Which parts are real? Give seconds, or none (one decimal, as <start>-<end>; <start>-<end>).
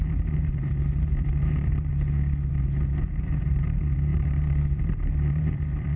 1.9-2.5